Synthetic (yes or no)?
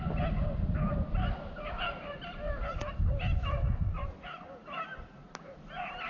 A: no